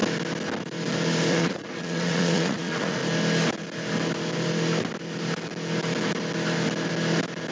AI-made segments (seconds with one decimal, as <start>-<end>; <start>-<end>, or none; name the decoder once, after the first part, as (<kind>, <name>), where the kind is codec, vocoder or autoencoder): 1.3-3.0 (vocoder, Vocos)